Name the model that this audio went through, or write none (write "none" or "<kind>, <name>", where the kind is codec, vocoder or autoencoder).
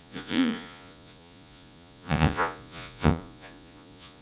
vocoder, Vocos